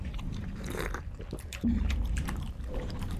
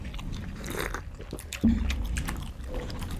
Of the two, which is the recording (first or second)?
second